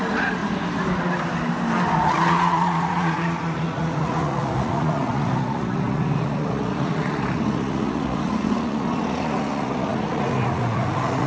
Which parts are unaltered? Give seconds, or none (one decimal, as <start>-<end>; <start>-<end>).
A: 0.4-2.3